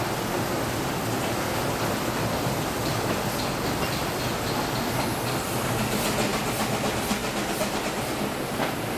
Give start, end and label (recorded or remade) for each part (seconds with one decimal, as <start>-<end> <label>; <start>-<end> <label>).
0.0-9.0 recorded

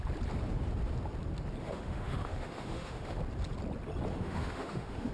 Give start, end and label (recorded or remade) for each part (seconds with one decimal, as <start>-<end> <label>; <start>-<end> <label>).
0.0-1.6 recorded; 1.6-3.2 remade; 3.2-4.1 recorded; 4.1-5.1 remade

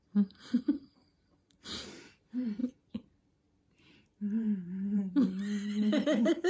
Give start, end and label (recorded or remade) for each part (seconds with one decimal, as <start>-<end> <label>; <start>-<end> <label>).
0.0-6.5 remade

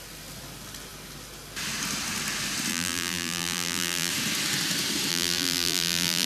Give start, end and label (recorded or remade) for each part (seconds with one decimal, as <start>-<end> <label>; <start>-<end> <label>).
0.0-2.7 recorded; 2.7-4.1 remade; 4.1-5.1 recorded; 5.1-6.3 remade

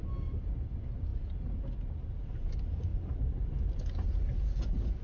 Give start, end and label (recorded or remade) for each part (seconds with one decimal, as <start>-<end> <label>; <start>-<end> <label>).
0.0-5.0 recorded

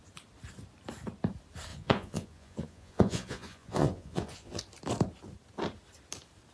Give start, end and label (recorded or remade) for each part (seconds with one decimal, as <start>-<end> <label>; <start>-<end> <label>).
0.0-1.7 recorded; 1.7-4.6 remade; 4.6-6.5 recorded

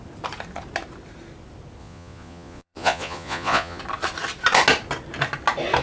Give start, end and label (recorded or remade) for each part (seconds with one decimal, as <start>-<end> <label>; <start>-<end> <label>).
0.0-1.8 recorded; 1.8-3.8 remade; 3.8-5.8 recorded